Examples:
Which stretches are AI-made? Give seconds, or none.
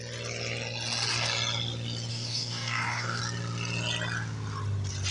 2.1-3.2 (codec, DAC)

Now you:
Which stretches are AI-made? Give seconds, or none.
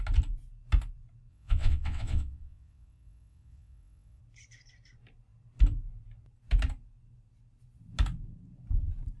1.3-4.2 (vocoder, WaveNeXt)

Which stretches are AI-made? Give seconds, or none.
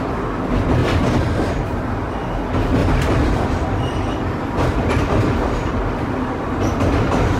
0.8-1.6 (vocoder, BigVGAN v2); 2.8-7.4